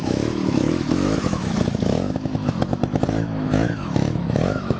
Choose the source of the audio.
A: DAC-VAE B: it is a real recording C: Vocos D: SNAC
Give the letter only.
A